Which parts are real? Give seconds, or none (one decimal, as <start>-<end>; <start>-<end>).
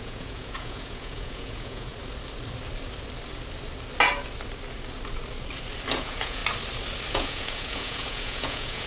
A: 1.9-5.9; 6.4-7.1